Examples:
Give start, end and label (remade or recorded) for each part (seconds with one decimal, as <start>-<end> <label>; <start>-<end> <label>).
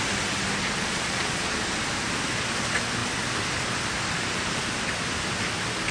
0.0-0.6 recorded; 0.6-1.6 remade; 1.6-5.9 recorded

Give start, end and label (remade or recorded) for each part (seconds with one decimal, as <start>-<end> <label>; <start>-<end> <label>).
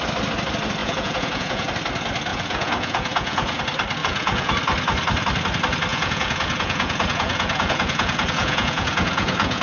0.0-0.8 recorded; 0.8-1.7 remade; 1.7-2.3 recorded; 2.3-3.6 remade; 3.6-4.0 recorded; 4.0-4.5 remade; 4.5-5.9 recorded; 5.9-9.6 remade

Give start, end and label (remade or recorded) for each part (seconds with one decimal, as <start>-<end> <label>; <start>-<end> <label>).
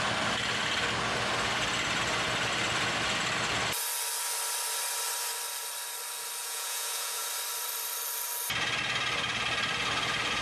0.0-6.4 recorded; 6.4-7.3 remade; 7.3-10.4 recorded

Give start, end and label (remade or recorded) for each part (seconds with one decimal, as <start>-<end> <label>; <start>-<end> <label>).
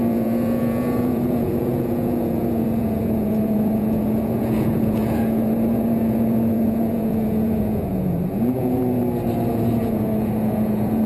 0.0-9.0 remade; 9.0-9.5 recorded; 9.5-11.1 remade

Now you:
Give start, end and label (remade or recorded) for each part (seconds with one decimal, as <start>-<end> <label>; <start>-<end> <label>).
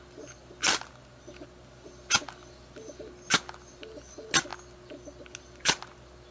0.0-6.3 recorded